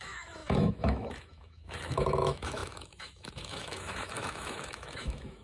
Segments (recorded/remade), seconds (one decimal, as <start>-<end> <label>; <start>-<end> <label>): 0.0-5.4 remade